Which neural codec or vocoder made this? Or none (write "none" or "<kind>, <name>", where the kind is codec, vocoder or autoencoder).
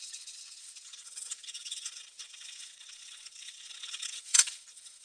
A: vocoder, WaveNeXt